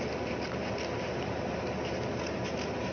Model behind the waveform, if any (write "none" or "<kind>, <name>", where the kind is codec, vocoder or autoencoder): none